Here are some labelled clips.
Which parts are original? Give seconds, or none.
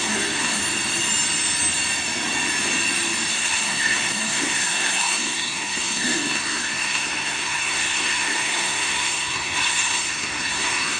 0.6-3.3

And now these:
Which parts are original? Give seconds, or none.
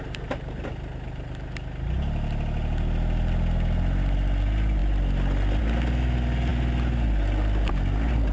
0.0-8.3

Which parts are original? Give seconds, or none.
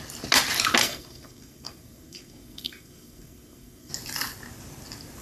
0.0-0.8; 3.9-5.2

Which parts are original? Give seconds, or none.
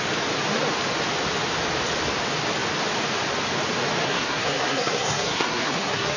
0.0-4.0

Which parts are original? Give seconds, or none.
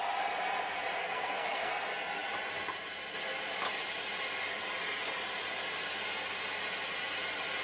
0.0-1.0; 1.7-7.6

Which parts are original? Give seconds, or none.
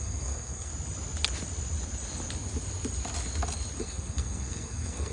0.7-3.8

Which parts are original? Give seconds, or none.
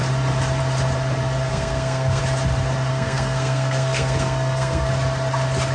0.0-1.5; 2.2-2.9; 4.9-5.7